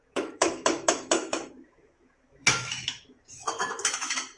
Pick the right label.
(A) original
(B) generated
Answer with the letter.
B